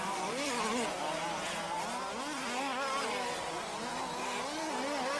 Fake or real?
real